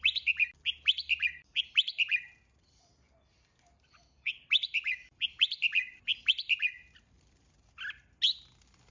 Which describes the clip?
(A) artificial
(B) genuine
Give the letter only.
B